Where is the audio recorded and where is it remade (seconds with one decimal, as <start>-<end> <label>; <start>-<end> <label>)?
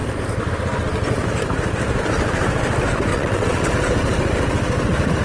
0.0-3.1 recorded; 3.1-3.7 remade; 3.7-5.2 recorded